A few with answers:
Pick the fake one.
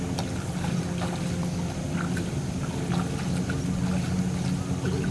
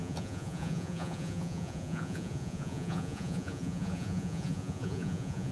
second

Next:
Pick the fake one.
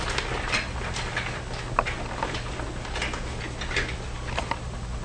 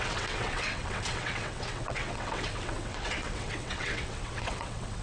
second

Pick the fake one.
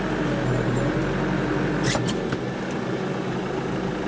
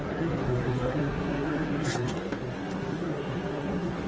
second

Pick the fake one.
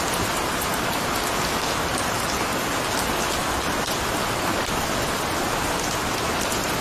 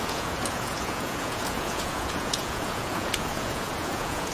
second